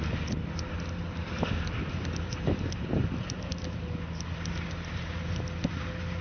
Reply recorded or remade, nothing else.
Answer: recorded